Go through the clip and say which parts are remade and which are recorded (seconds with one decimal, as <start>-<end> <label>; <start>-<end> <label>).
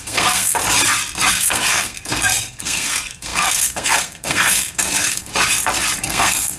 0.0-0.6 remade; 0.6-1.3 recorded; 1.3-5.3 remade; 5.3-6.0 recorded; 6.0-6.6 remade